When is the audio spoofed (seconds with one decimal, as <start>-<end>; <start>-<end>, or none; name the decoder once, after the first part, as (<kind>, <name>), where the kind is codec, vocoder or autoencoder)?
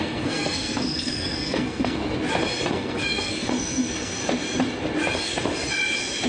0.0-2.0 (codec, SNAC); 2.7-4.2